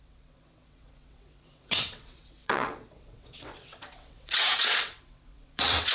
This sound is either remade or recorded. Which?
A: remade